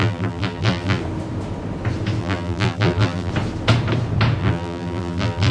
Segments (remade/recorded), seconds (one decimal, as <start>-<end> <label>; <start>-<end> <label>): 0.0-1.0 remade; 1.0-2.2 recorded; 2.2-3.3 remade; 3.3-4.4 recorded; 4.4-5.5 remade